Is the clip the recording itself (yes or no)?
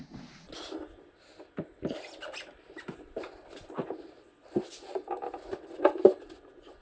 yes